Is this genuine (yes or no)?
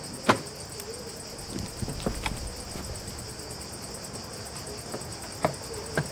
yes